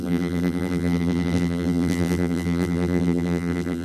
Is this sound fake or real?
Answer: fake